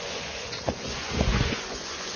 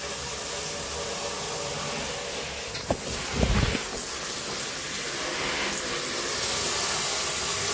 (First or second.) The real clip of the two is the second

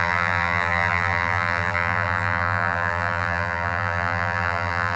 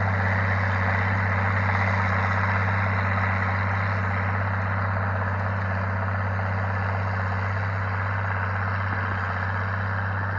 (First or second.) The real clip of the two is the second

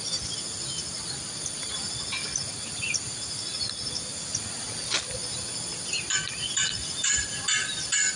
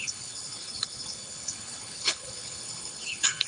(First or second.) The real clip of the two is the first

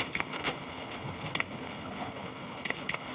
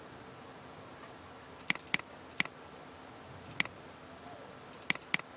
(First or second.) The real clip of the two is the second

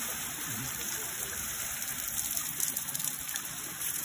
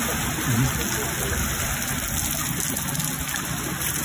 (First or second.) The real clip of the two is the second